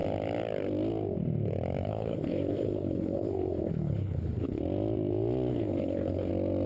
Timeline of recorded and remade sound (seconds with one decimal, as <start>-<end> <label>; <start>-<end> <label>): 0.0-1.8 recorded; 1.8-4.6 remade; 4.6-5.5 recorded; 5.5-6.3 remade; 6.3-6.7 recorded